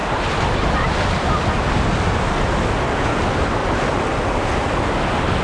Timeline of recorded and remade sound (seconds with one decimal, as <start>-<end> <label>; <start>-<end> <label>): 0.0-3.6 recorded; 3.6-4.3 remade; 4.3-5.4 recorded